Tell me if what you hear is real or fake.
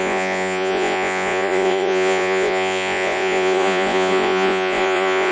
fake